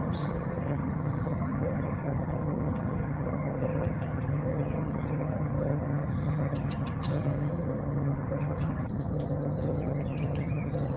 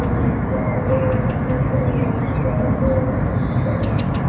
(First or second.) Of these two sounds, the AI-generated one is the first